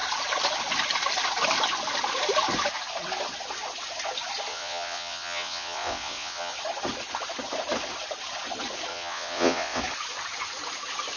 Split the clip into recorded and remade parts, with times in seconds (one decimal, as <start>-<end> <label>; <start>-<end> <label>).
0.0-4.5 recorded; 4.5-6.5 remade; 6.5-8.9 recorded; 8.9-9.8 remade; 9.8-11.2 recorded